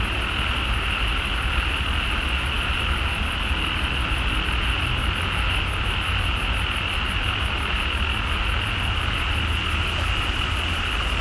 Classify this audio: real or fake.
real